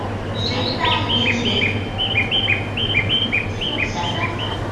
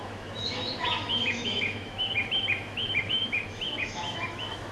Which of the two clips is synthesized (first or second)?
second